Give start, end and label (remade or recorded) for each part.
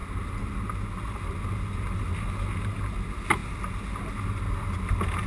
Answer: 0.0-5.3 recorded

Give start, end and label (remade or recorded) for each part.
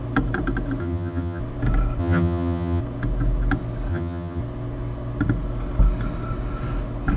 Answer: 0.0-0.8 recorded; 0.8-1.4 remade; 1.4-2.0 recorded; 2.0-2.8 remade; 2.8-3.9 recorded; 3.9-4.4 remade; 4.4-7.2 recorded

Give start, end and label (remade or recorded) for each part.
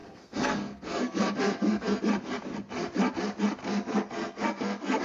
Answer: 0.0-2.0 remade; 2.0-3.6 recorded; 3.6-5.0 remade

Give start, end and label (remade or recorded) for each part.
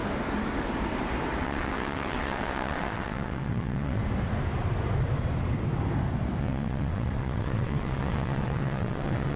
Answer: 0.0-1.4 recorded; 1.4-4.0 remade; 4.0-6.4 recorded; 6.4-9.4 remade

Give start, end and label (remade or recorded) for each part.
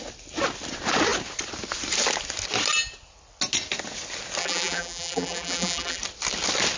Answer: 0.0-4.4 recorded; 4.4-6.0 remade; 6.0-6.8 recorded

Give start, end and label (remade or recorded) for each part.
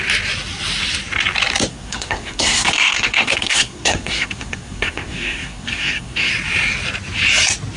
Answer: 0.0-1.7 recorded; 1.7-6.3 remade; 6.3-7.8 recorded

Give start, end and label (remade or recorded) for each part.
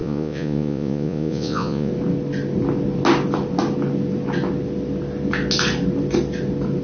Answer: 0.0-1.9 remade; 1.9-6.8 recorded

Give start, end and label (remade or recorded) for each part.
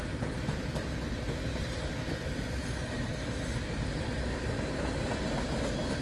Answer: 0.0-6.0 recorded